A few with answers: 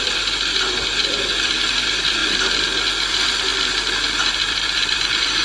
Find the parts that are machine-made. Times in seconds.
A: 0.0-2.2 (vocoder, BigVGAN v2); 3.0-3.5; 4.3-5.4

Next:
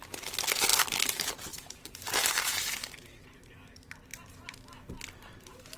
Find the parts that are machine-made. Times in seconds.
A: 0.7-2.6 (vocoder, BigVGAN v2); 4.1-4.9

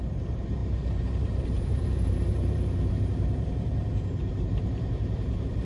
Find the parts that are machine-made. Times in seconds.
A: 0.0-5.7 (vocoder, BigVGAN v2)

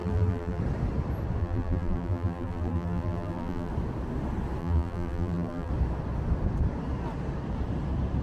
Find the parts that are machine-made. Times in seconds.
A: 0.0-0.6 (vocoder, BigVGAN v2); 1.4-3.7; 4.6-5.7

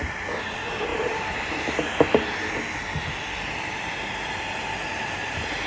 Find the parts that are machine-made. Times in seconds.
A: 0.9-1.4 (vocoder, BigVGAN v2)